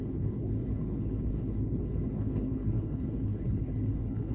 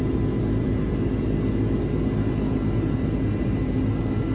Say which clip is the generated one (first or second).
first